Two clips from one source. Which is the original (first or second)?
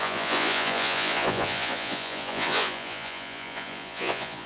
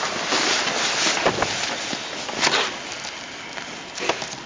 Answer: second